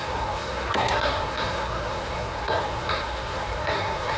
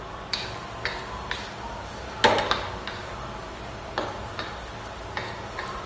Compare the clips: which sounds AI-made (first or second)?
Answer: first